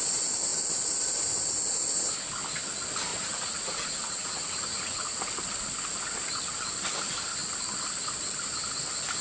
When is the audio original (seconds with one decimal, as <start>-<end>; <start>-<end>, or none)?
0.0-3.1; 5.4-9.2